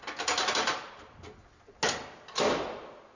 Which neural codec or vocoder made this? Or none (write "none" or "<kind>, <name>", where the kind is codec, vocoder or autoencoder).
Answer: none